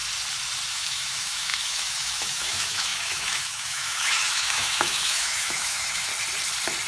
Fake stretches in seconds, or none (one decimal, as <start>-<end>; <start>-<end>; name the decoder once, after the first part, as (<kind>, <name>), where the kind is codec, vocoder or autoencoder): 0.7-6.1 (autoencoder, DAC-VAE)

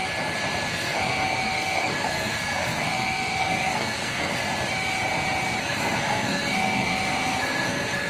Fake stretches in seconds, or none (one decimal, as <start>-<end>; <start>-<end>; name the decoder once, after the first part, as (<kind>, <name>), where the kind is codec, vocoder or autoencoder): 0.7-4.4 (codec, SNAC); 5.6-8.1

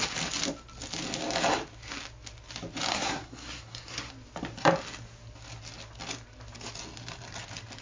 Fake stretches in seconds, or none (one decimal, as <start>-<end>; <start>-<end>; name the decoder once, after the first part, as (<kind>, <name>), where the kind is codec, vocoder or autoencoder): 2.9-4.1 (codec, SNAC)

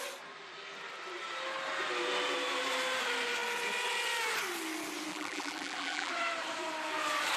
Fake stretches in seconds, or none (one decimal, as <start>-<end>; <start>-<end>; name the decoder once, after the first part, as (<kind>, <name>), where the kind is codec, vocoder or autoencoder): 5.1-6.1 (vocoder, BigVGAN v2)

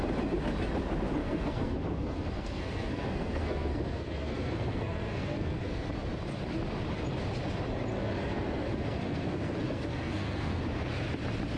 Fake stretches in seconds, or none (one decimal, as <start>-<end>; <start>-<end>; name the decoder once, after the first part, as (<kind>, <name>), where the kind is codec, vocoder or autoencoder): 1.2-5.9 (codec, SNAC); 7.9-10.6

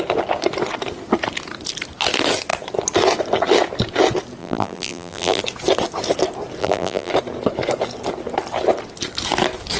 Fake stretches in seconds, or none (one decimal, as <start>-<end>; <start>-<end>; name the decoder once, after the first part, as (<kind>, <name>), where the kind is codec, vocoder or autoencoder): 4.4-5.4 (vocoder, BigVGAN v2); 6.6-7.1

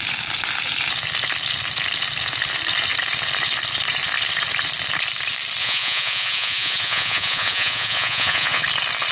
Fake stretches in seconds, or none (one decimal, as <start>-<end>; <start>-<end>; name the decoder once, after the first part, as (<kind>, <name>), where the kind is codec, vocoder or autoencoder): 5.6-8.6 (vocoder, Vocos)

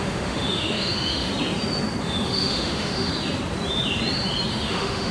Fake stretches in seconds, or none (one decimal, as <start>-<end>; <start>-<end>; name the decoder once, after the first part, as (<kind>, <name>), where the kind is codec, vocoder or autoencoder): 0.0-1.3 (autoencoder, DAC-VAE); 2.0-3.1; 4.5-5.1